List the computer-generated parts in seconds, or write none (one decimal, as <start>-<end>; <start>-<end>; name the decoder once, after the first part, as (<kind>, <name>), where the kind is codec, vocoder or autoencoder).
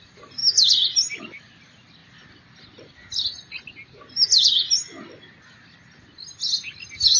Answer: none